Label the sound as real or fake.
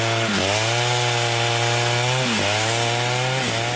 real